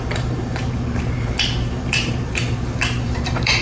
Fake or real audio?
fake